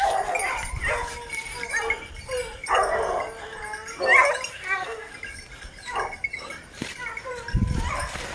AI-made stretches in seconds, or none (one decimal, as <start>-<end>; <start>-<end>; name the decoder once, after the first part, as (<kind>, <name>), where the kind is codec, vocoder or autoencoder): 4.5-5.1 (codec, SNAC)

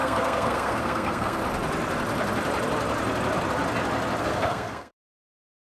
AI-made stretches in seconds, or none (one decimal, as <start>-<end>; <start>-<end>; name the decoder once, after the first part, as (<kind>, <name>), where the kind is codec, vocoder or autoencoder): 0.0-1.4 (codec, SNAC); 4.2-5.6

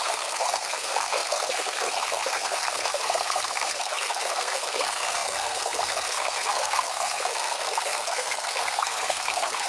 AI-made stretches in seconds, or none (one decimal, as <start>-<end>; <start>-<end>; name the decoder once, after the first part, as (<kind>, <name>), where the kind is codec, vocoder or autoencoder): 0.0-9.7 (codec, SNAC)